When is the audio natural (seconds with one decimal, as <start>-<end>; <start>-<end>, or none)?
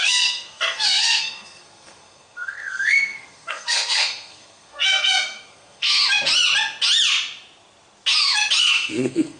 6.0-8.6